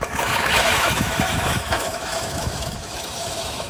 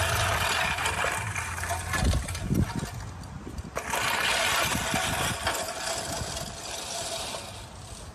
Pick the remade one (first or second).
first